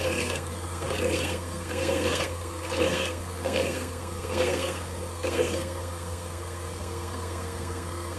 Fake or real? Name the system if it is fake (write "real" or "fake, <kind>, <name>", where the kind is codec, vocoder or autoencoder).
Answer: fake, codec, SNAC